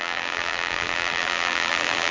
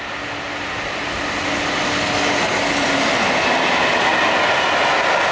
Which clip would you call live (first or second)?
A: second